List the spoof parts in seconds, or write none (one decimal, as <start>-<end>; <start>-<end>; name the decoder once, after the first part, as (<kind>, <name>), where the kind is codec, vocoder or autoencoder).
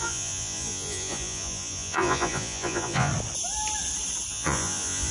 0.0-3.1 (vocoder, Vocos); 4.3-5.1